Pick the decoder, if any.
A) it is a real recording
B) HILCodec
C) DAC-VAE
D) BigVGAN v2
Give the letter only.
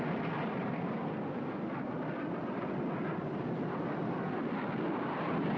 A